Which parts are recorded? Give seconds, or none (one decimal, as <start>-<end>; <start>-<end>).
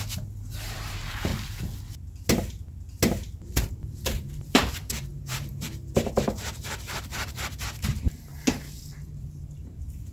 1.3-3.7; 8.3-9.2